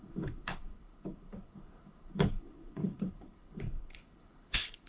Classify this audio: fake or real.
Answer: fake